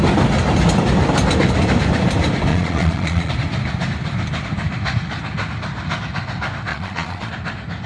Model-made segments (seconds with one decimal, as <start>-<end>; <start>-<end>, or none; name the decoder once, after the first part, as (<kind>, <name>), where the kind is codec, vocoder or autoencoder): 2.5-3.3 (vocoder, Vocos); 6.7-7.3